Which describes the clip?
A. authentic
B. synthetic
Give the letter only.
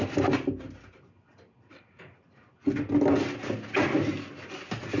A